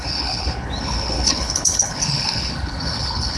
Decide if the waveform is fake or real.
fake